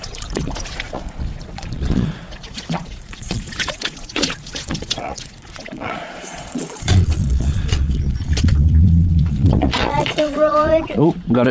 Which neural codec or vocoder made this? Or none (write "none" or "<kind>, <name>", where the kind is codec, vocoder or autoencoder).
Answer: vocoder, Vocos